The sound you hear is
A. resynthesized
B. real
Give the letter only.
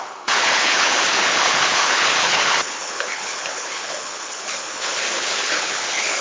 A